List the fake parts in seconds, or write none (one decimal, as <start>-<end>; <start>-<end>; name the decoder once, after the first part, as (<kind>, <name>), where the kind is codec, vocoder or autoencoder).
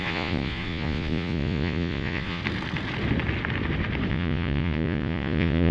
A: 0.0-2.4 (vocoder, Vocos); 4.1-5.7